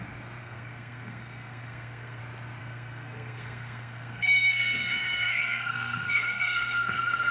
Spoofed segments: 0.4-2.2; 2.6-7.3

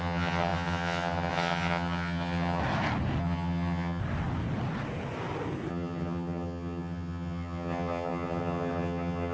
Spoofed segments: 0.0-2.6; 3.2-4.0; 5.7-9.3

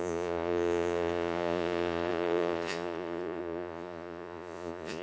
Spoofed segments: 0.0-5.0

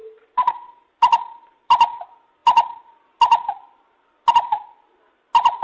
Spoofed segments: 0.0-1.7

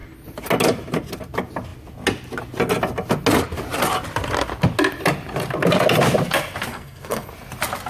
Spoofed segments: 6.7-7.3

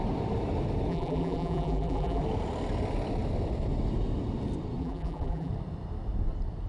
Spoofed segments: 0.9-2.2; 4.8-5.5

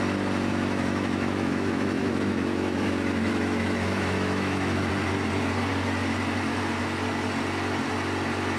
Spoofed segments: 0.5-4.9

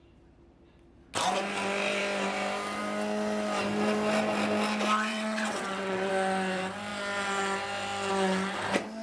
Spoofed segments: 5.1-6.1